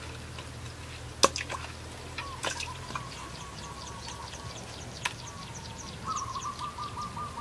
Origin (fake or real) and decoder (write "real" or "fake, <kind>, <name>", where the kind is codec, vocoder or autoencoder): real